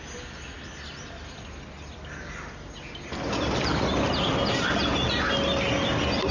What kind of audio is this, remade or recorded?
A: recorded